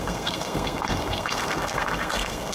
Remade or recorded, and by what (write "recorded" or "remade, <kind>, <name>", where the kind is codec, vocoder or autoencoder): remade, codec, SNAC